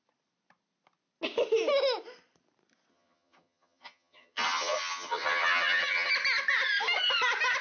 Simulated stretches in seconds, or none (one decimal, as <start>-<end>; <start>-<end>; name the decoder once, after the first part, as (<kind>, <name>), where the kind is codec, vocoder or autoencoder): 2.9-6.1 (vocoder, HiFi-GAN)